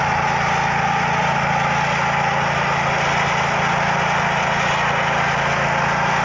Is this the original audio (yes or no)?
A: yes